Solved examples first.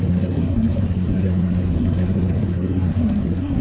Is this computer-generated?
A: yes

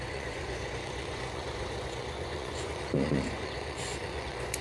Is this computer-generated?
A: yes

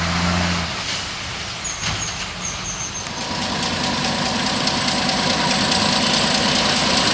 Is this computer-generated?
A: no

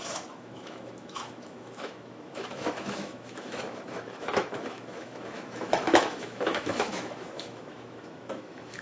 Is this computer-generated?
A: yes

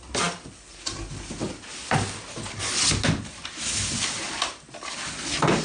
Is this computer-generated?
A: no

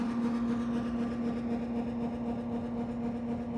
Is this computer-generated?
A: no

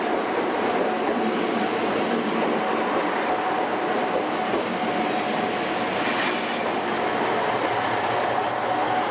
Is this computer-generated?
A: no